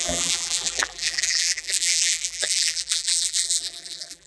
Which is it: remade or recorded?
remade